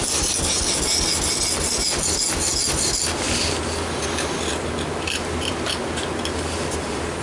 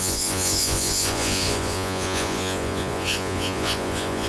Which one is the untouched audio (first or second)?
first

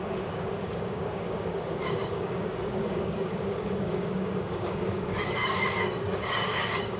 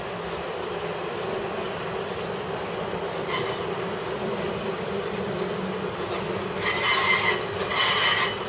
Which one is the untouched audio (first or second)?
second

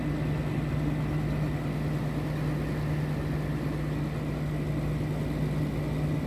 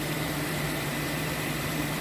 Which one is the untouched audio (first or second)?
first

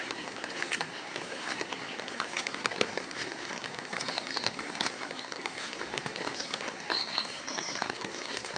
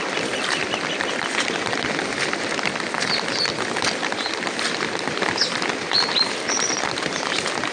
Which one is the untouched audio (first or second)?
second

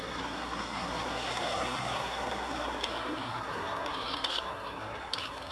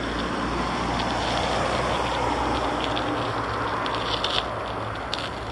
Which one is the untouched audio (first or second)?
second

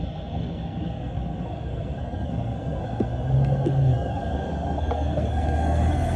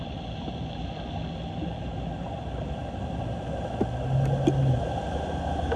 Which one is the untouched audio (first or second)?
second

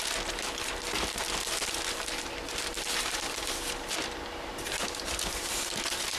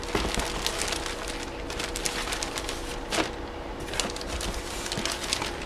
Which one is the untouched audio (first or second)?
second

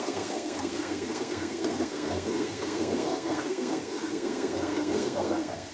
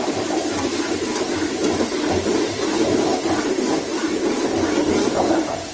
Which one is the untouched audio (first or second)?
second